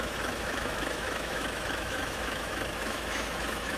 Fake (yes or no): yes